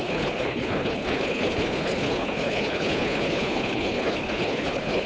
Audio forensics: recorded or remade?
remade